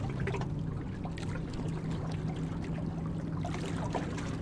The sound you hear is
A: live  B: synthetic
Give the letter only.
A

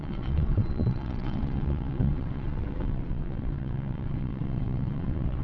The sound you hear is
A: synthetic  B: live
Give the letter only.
A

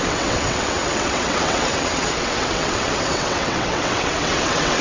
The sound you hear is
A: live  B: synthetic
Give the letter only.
B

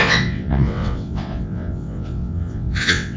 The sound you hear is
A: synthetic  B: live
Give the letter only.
A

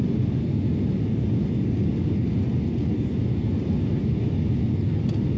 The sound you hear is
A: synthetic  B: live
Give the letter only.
B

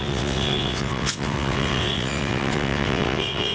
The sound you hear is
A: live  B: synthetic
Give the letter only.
B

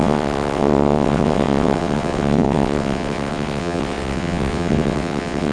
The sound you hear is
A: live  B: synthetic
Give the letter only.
B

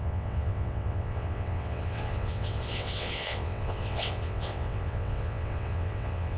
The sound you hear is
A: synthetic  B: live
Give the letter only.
A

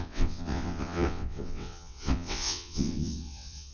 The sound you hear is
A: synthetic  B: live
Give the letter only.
A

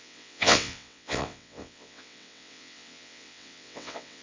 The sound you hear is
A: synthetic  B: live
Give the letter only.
A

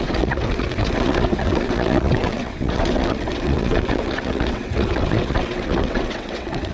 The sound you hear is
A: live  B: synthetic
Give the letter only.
B